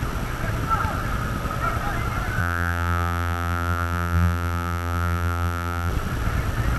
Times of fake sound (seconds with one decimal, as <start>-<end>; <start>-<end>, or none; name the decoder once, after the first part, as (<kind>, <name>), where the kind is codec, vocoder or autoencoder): 2.4-5.9 (vocoder, BigVGAN v2)